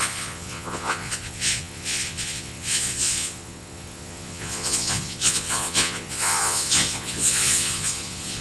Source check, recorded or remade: remade